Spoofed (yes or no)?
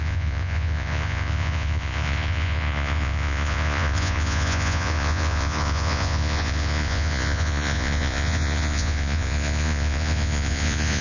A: yes